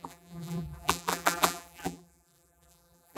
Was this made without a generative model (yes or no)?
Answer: no